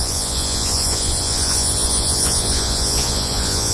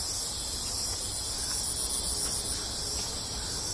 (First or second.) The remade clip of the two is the first